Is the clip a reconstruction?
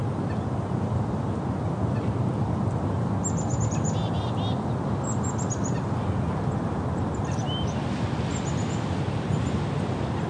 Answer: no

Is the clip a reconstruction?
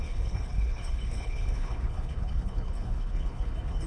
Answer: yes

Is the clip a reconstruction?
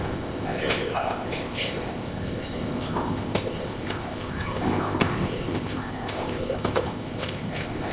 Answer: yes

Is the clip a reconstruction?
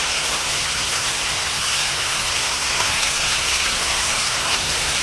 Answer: yes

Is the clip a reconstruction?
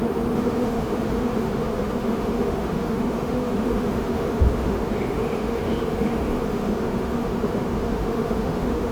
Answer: yes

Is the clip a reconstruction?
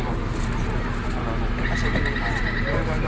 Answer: no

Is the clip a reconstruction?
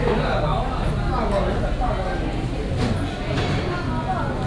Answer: no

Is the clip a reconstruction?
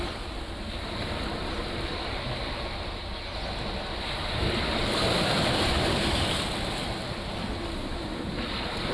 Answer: no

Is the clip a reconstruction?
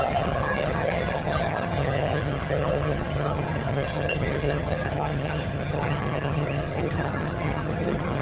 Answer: yes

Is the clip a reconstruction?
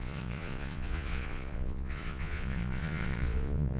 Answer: yes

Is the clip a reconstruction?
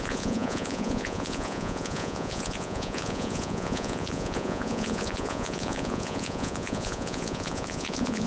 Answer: yes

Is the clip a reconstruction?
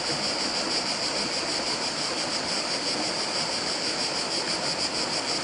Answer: no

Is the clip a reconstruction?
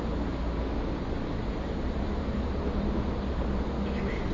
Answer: no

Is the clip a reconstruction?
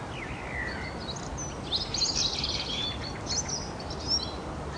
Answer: no